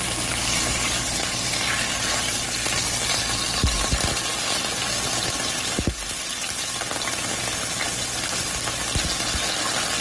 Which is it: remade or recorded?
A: recorded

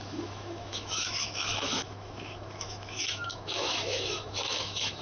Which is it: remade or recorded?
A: remade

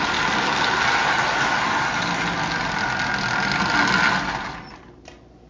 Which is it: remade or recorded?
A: recorded